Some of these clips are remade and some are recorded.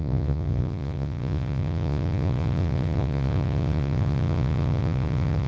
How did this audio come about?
remade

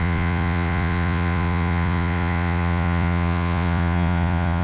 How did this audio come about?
remade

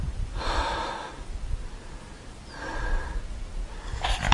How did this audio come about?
recorded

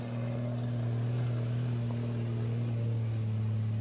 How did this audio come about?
recorded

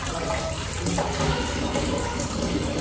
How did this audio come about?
recorded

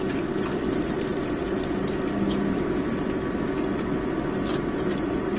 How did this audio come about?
recorded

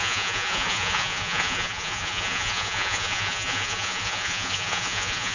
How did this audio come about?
remade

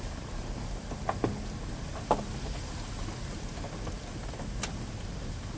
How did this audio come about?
recorded